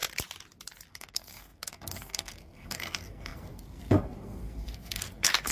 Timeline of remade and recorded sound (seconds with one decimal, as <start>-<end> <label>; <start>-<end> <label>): 0.0-0.9 recorded; 0.9-5.5 remade